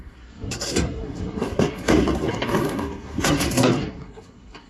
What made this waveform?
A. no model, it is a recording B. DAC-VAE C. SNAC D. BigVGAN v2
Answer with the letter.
C